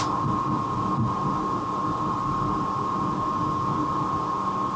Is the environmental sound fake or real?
real